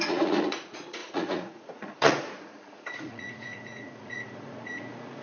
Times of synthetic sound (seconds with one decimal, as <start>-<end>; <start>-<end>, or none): 0.0-5.2